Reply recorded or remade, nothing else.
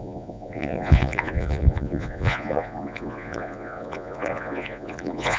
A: remade